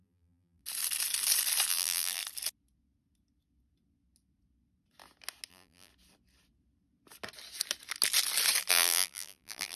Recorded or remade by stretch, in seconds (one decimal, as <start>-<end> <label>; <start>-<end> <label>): 0.0-0.6 remade; 0.6-1.7 recorded; 1.7-2.2 remade; 2.2-5.5 recorded; 5.5-5.9 remade; 5.9-8.7 recorded; 8.7-9.8 remade